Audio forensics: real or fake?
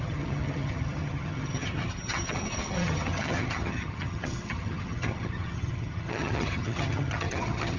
fake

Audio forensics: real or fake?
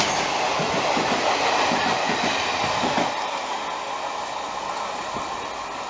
real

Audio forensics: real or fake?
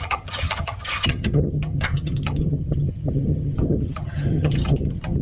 fake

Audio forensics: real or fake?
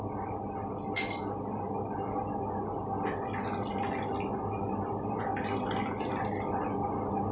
real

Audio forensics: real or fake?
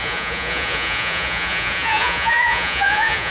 fake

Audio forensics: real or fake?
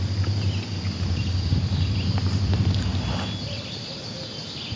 real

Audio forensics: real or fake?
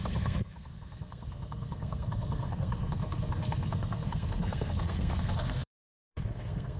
fake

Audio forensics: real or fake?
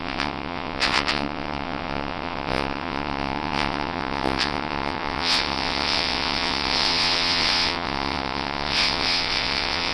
fake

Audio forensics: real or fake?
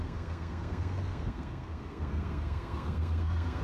fake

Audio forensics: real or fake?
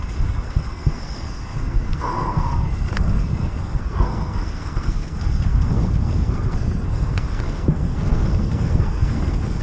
fake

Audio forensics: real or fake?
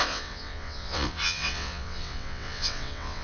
fake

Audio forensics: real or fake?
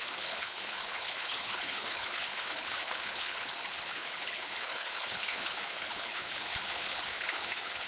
fake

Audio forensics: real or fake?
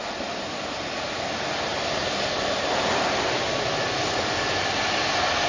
real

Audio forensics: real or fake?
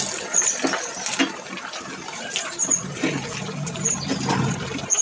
real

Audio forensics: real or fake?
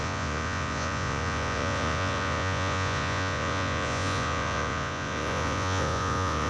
fake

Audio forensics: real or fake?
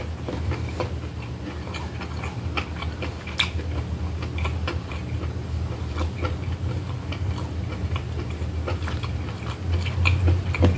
real